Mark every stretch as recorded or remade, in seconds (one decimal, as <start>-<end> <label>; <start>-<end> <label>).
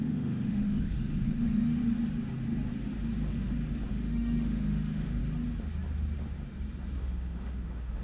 0.0-1.8 remade; 1.8-3.9 recorded; 3.9-5.2 remade; 5.2-7.0 recorded; 7.0-8.0 remade